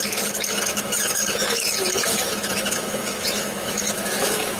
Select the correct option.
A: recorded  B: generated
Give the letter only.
B